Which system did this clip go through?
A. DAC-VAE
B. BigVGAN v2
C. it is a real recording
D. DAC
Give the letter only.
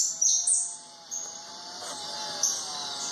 C